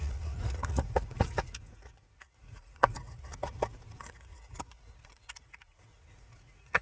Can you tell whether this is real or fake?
fake